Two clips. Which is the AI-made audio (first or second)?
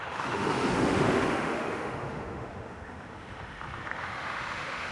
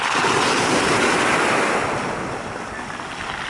first